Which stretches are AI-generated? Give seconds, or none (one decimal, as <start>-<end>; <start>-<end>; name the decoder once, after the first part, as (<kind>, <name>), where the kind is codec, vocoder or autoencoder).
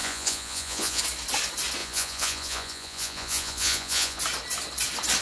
0.0-1.0 (vocoder, Vocos); 1.8-4.2